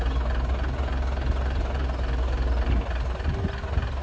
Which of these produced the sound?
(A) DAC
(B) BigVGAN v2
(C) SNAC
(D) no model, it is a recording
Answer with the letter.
D